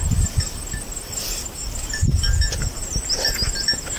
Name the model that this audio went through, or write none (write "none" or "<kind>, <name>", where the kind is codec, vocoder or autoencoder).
none